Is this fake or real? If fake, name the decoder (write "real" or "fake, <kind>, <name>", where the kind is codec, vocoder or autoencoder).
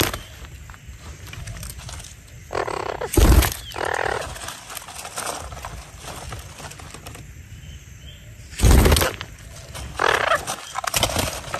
real